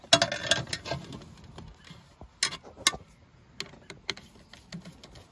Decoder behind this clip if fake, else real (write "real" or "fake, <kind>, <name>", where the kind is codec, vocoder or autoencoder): real